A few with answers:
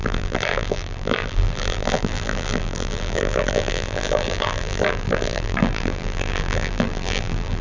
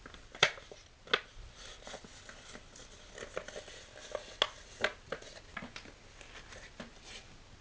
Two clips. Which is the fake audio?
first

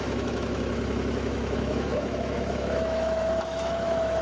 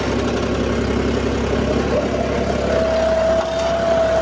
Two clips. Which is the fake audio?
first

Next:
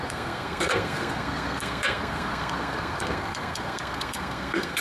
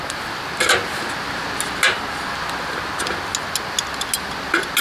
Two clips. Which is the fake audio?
first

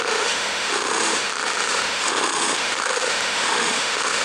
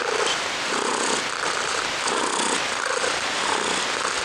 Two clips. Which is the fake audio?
first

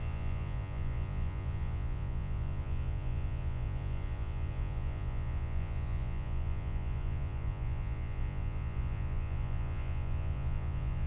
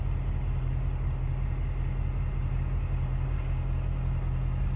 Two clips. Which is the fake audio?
first